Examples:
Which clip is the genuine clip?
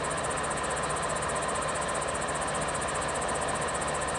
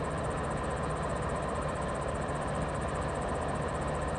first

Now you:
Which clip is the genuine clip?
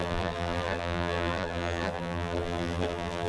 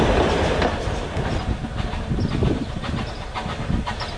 second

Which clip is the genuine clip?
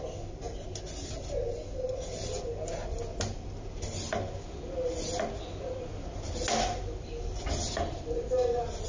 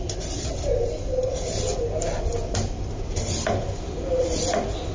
first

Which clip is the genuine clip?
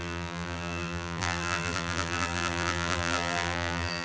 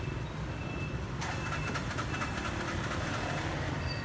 second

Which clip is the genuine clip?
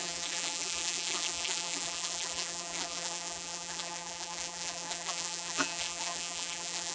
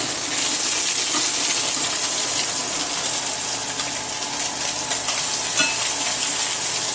second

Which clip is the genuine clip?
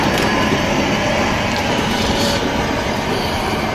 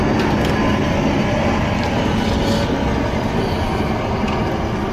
second